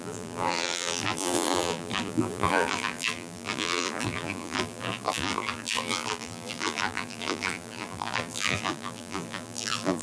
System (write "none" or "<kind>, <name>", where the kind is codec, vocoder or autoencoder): vocoder, BigVGAN v2